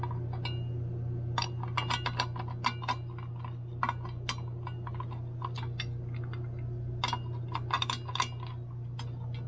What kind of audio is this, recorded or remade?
recorded